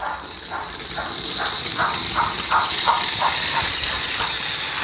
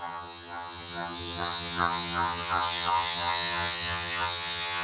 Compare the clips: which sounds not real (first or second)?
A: second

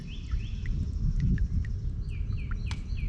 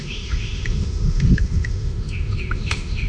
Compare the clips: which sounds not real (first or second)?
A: second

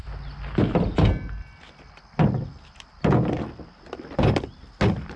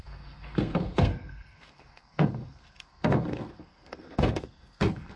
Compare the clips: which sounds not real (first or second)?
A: second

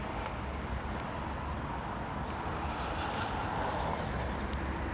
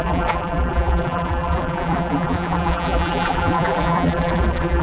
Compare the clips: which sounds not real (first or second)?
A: second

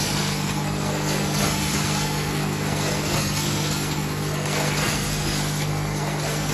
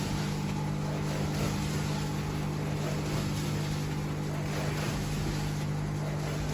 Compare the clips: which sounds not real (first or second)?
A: first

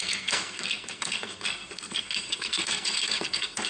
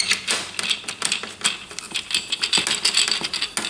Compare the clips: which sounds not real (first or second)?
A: first